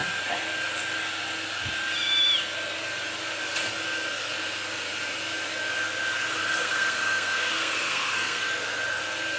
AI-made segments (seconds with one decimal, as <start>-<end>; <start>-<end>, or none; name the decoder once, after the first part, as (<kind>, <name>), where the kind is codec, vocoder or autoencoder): 6.4-8.4 (codec, SNAC)